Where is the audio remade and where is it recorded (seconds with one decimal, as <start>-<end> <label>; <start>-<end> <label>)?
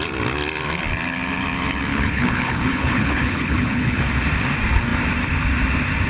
0.0-1.9 recorded; 1.9-4.0 remade; 4.0-6.1 recorded